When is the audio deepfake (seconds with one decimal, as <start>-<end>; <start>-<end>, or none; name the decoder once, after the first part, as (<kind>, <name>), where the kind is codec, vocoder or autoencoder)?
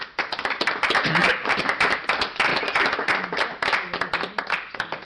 1.2-1.9 (vocoder, BigVGAN v2)